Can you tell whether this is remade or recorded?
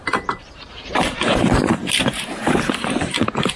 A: remade